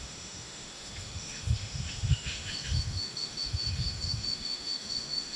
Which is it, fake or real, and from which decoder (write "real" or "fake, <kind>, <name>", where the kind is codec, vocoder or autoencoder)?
fake, autoencoder, DAC-VAE